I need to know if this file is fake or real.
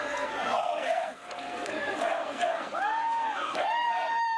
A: fake